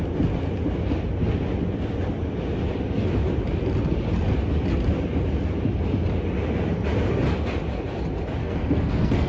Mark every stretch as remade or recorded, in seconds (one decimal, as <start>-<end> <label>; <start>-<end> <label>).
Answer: 0.0-8.4 recorded; 8.4-9.3 remade